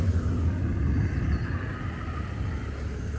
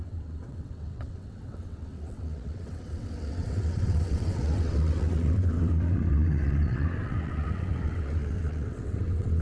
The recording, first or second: first